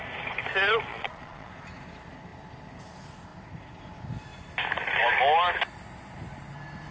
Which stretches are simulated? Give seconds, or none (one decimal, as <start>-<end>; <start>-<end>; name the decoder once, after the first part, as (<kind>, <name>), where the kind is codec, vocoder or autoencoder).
0.9-1.5 (vocoder, Vocos)